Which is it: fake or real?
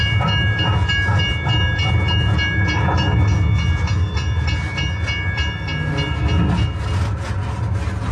real